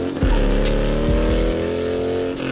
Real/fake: real